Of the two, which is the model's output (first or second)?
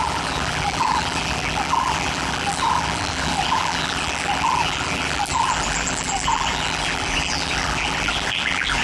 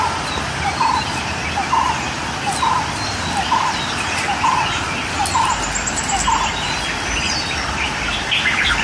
first